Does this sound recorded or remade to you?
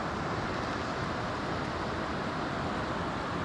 recorded